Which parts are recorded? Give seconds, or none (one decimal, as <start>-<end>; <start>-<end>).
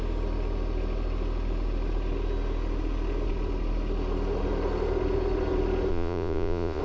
0.0-5.9